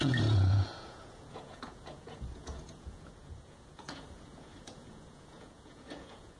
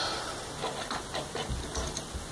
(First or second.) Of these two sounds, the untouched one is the second